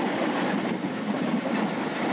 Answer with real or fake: real